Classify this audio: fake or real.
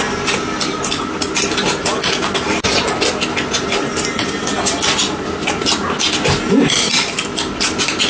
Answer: real